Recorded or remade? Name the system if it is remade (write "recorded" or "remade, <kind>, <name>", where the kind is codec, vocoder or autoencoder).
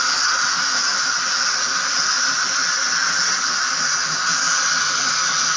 recorded